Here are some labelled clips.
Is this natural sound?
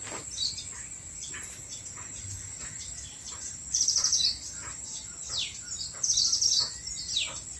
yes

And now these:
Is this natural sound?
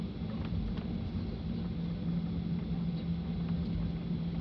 yes